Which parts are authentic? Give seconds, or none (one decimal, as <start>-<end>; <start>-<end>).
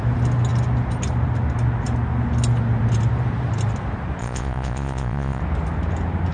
0.0-4.2; 5.4-6.3